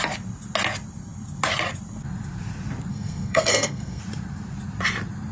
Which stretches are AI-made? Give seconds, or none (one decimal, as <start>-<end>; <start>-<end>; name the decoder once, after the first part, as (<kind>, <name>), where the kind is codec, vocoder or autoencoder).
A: 2.9-4.0 (codec, SNAC)